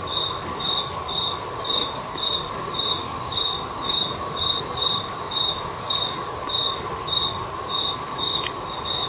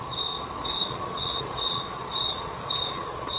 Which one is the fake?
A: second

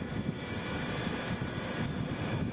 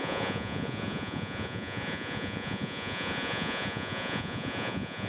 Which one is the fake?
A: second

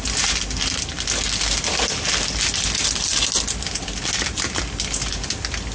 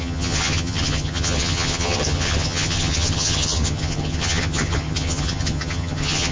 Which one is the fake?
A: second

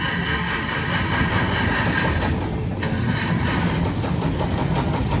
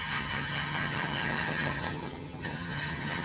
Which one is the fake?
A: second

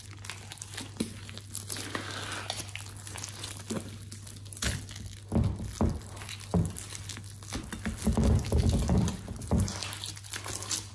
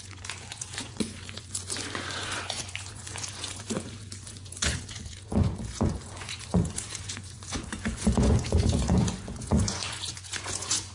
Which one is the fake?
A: second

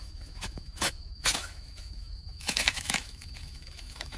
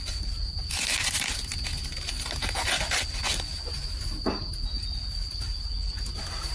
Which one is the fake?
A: first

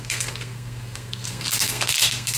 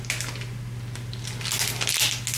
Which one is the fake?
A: first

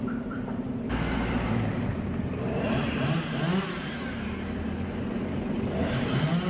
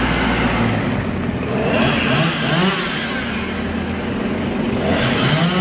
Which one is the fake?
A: first